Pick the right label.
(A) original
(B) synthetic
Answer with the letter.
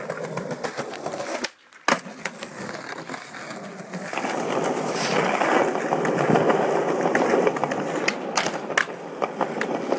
A